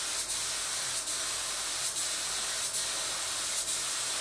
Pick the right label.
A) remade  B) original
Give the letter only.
B